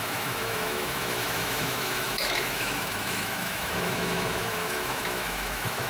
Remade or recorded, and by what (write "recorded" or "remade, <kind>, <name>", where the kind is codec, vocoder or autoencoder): remade, autoencoder, DAC-VAE